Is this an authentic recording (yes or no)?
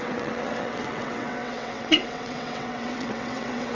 no